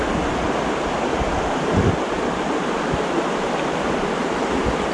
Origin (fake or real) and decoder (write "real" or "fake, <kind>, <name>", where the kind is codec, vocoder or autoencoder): real